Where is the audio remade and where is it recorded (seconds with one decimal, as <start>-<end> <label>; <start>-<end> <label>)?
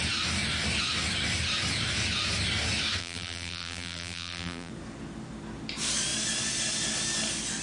0.0-3.0 recorded; 3.0-4.7 remade; 4.7-7.6 recorded